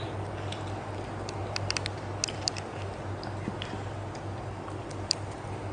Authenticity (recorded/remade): recorded